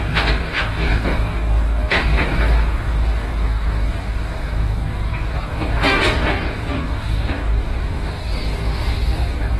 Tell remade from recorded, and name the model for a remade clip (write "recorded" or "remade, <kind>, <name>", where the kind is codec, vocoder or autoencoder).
remade, codec, DAC